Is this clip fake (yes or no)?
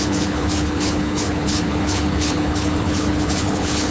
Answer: yes